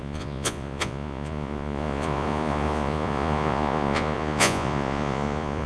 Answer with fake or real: fake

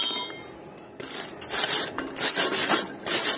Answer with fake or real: real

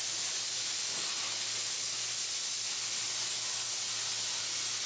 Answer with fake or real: real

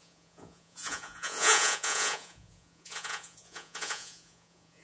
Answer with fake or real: fake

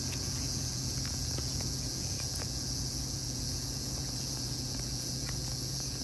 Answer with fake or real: fake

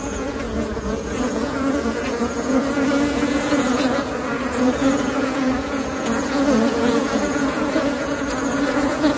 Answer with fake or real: fake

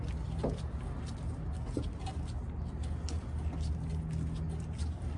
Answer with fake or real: real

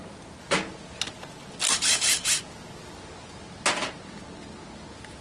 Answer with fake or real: real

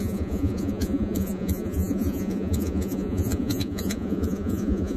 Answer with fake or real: fake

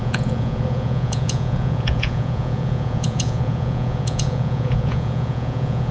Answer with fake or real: fake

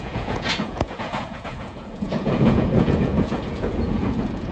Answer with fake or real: fake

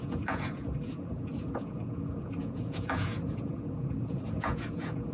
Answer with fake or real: fake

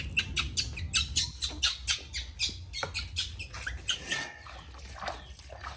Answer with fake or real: real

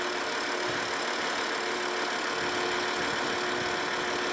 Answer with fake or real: real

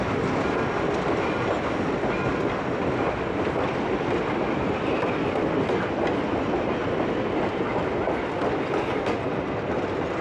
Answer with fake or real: real